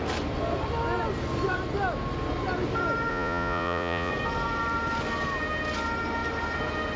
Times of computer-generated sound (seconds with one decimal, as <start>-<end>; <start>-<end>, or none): 3.1-4.1